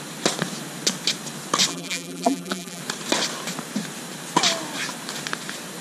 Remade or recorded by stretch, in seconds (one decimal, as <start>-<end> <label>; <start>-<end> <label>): 0.0-1.7 recorded; 1.7-2.8 remade; 2.8-5.8 recorded